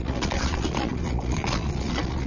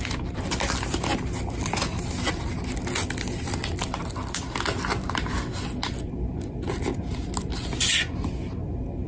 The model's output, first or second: first